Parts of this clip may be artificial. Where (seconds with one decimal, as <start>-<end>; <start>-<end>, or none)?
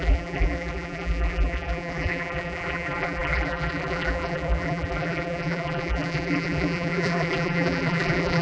0.0-8.4